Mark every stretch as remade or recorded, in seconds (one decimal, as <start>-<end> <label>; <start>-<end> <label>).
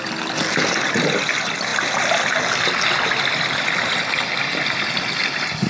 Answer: 0.0-5.7 recorded